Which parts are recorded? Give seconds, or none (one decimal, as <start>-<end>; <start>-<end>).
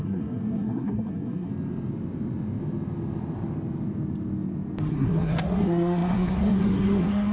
1.5-4.9